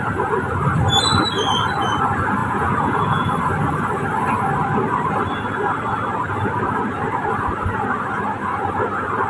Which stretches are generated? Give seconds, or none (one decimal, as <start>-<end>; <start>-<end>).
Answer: 2.4-3.3